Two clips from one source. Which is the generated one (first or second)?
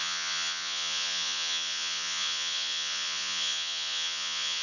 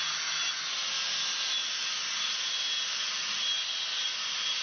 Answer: first